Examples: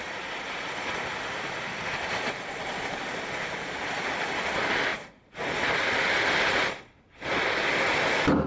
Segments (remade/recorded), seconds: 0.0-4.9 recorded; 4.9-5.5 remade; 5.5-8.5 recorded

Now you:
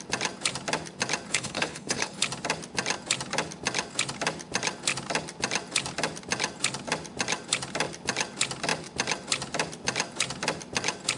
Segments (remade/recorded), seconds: 0.0-1.3 recorded; 1.3-2.2 remade; 2.2-11.2 recorded

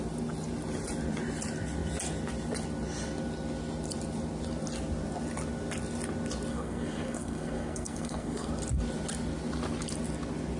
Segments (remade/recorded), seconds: 0.0-6.5 recorded; 6.5-8.5 remade; 8.5-10.6 recorded

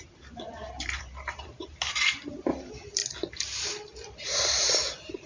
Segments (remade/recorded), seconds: 0.0-3.0 remade; 3.0-4.1 recorded; 4.1-5.3 remade

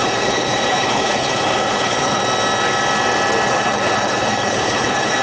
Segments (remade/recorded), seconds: 0.0-2.2 remade; 2.2-3.5 recorded; 3.5-5.2 remade